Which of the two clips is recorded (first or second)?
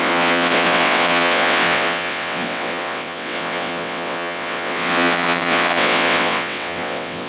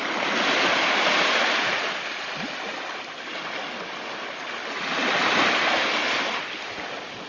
second